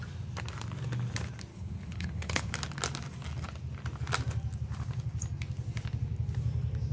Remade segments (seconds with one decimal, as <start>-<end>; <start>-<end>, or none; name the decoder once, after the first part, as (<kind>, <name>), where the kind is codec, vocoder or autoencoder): 1.5-2.5 (codec, HILCodec)